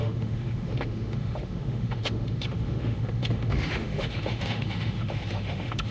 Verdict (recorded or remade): remade